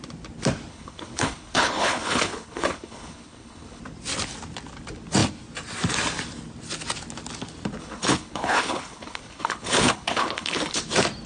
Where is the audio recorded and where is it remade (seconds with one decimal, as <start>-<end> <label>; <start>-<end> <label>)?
0.0-0.7 recorded; 0.7-3.8 remade; 3.8-7.8 recorded; 7.8-10.8 remade; 10.8-11.3 recorded